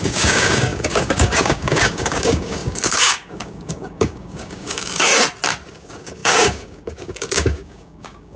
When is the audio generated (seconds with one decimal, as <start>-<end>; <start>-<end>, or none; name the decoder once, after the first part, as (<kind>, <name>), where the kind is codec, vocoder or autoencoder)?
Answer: 0.0-5.1 (codec, DAC); 5.7-8.4

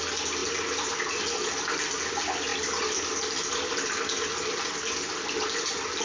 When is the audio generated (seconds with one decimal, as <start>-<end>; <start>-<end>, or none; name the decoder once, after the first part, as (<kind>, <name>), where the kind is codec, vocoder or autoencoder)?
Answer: none

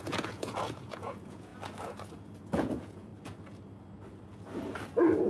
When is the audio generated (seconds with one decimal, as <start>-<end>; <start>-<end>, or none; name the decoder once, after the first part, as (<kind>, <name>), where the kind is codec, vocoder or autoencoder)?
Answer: 0.0-1.5 (vocoder, Vocos); 2.5-3.1

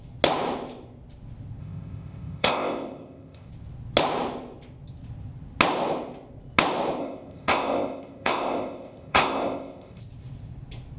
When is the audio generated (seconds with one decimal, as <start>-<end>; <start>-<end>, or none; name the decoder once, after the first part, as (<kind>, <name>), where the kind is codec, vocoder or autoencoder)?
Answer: 1.6-3.5 (codec, ZipCodec); 7.0-10.0

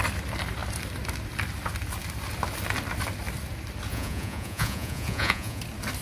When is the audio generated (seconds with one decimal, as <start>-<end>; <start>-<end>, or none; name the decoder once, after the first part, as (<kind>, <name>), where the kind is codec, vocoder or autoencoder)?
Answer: 3.9-5.6 (vocoder, Vocos)

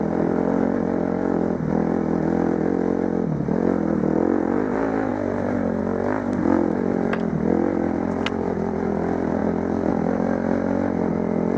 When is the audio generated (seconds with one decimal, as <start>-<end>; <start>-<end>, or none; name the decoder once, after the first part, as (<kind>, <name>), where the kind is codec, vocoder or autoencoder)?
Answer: none